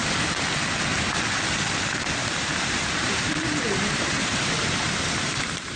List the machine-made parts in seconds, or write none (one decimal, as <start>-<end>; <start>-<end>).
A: 2.2-5.8